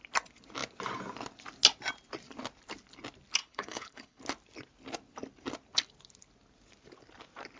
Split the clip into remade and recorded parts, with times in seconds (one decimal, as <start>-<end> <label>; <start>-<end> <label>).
0.0-3.4 recorded; 3.4-4.2 remade; 4.2-7.6 recorded